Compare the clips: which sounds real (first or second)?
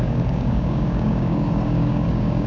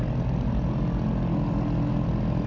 second